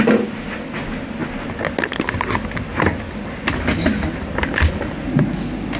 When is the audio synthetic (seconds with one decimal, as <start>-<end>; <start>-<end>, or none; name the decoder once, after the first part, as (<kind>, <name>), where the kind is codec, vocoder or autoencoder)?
none

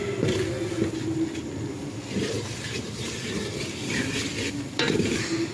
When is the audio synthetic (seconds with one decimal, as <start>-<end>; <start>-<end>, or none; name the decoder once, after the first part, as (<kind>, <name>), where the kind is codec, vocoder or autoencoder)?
2.2-4.3 (vocoder, BigVGAN v2)

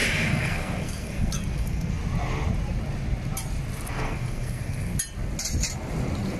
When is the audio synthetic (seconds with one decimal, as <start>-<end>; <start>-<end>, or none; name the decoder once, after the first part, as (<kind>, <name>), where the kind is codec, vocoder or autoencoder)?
0.0-2.0 (codec, SNAC); 3.9-4.9

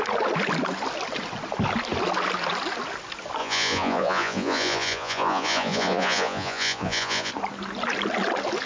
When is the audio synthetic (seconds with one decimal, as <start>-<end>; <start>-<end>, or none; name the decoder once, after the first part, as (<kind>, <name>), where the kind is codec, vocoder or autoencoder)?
3.4-7.3 (vocoder, Vocos)